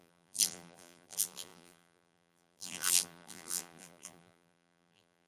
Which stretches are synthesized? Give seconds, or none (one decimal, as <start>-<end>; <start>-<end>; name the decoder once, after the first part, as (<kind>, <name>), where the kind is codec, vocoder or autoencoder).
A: 0.0-5.3 (vocoder, BigVGAN v2)